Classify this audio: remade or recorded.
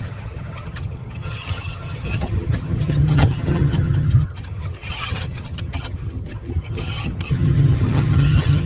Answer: remade